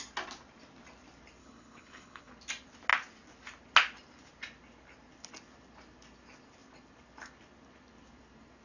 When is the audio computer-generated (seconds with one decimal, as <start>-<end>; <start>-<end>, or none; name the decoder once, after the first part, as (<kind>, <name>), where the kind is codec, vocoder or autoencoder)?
1.4-2.3 (codec, HILCodec)